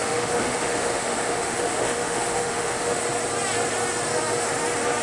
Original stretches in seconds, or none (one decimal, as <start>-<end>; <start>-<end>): 3.0-5.0